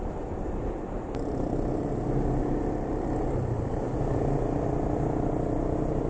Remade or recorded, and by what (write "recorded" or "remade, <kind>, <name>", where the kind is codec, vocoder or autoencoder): recorded